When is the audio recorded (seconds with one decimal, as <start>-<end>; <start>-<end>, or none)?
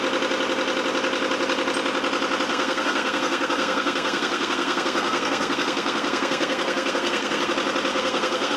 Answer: 0.0-2.5; 7.5-7.9